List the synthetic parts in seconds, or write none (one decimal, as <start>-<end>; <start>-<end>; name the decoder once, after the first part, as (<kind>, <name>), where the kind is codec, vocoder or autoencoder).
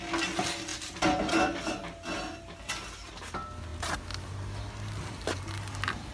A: none